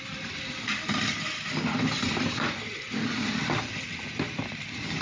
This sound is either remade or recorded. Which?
recorded